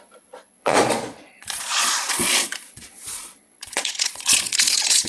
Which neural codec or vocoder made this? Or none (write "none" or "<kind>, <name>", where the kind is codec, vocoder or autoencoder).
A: vocoder, Vocos